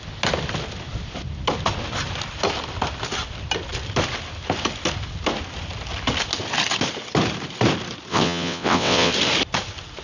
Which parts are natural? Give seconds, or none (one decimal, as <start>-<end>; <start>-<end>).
0.0-8.1; 9.1-10.0